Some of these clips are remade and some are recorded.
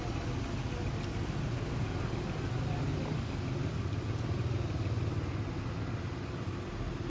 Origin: recorded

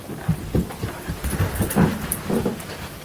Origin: remade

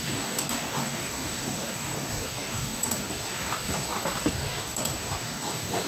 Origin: remade